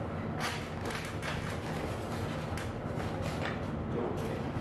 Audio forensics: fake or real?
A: real